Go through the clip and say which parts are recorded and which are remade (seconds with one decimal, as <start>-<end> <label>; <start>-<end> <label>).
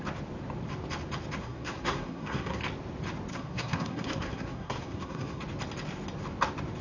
0.0-1.4 recorded; 1.4-2.6 remade; 2.6-3.3 recorded; 3.3-5.4 remade; 5.4-6.8 recorded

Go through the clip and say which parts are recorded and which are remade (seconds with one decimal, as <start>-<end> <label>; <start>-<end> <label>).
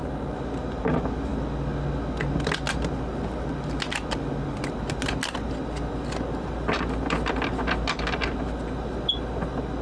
0.0-9.8 recorded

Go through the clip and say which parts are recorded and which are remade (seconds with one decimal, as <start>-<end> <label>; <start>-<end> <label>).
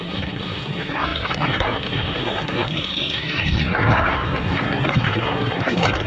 0.0-6.1 remade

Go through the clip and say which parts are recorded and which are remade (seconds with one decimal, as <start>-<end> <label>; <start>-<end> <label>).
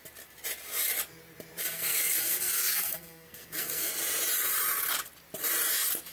0.0-1.6 recorded; 1.6-3.9 remade; 3.9-6.1 recorded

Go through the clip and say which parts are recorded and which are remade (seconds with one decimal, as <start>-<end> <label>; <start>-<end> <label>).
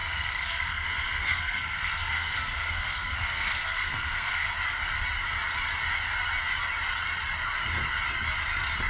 0.0-4.5 remade; 4.5-8.9 recorded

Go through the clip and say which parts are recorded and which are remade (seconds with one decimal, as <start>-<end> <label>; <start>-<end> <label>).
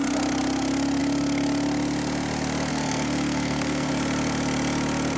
0.0-2.7 recorded; 2.7-3.9 remade; 3.9-5.2 recorded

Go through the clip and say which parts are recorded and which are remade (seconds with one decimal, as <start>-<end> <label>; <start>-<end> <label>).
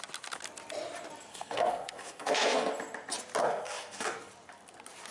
0.0-1.3 recorded; 1.3-2.7 remade; 2.7-3.4 recorded; 3.4-4.3 remade; 4.3-5.1 recorded